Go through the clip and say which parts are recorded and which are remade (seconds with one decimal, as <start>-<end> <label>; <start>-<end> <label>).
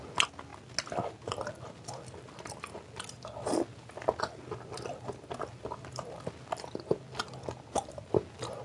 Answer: 0.0-8.6 recorded